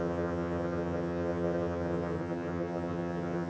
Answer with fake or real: fake